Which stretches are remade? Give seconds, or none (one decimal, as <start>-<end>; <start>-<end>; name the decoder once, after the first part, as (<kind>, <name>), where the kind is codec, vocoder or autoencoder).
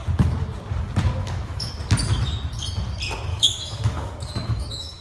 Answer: 1.2-1.7 (autoencoder, DAC-VAE); 3.3-5.0